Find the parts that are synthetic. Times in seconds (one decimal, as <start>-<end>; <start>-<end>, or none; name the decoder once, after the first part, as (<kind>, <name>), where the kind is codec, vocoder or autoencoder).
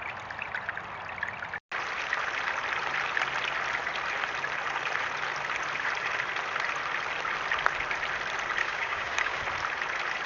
8.6-9.4 (codec, DAC)